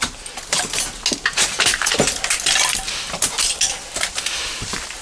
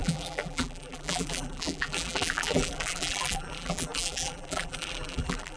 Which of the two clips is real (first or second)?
first